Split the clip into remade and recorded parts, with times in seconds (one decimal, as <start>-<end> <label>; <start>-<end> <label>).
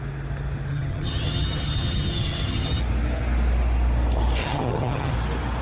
0.0-0.7 recorded; 0.7-2.8 remade; 2.8-4.4 recorded; 4.4-5.1 remade; 5.1-5.6 recorded